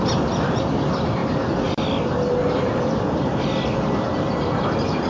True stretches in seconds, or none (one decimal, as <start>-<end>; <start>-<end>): 0.0-5.1

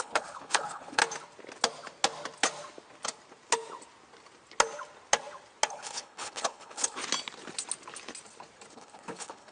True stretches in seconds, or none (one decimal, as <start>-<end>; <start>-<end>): 1.0-5.7; 7.0-8.7

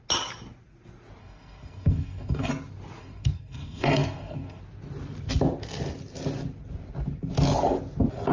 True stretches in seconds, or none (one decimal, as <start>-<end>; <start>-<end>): 0.0-1.2; 2.5-3.0; 4.6-8.3